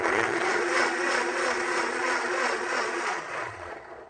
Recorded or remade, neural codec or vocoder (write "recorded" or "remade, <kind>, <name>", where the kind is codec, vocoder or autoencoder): remade, vocoder, Vocos